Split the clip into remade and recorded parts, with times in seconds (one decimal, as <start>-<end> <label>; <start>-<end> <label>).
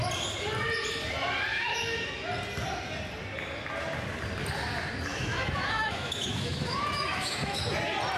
0.0-1.5 recorded; 1.5-2.3 remade; 2.3-5.1 recorded; 5.1-7.6 remade; 7.6-8.2 recorded